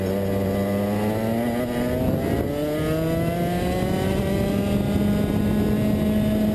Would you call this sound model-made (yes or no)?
no